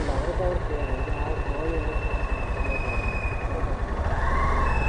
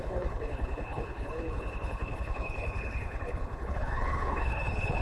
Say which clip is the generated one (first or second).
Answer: second